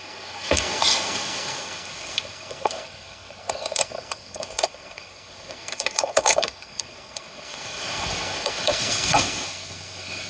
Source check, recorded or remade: remade